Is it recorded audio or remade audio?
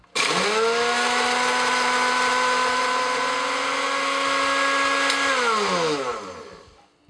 recorded